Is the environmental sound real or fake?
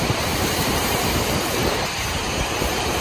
fake